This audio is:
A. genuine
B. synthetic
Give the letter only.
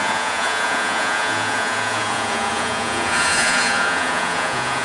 B